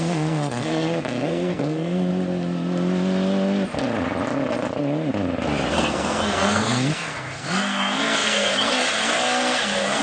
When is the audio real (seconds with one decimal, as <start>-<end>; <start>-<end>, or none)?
2.1-5.7